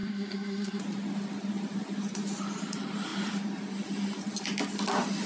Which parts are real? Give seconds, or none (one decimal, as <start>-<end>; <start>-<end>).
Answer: 0.8-5.3